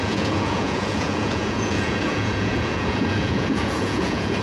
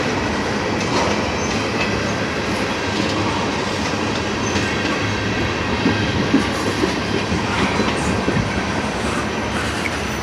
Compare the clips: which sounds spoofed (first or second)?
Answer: first